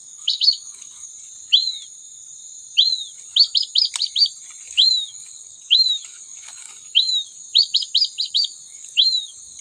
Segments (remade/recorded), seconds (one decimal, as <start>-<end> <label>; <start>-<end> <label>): 0.0-1.1 remade; 1.1-4.7 recorded; 4.7-7.5 remade; 7.5-8.3 recorded; 8.3-9.6 remade